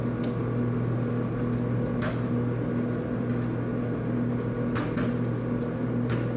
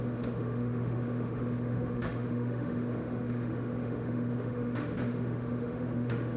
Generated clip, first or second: second